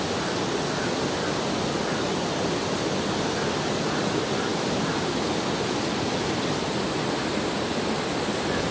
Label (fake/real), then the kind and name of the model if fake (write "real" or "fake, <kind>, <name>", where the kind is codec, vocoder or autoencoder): real